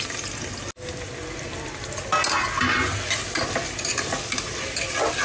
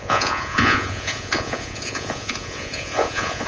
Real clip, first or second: first